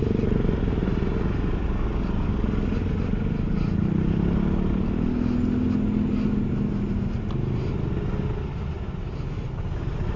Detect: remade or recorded recorded